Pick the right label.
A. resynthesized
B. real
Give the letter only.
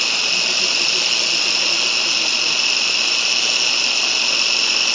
B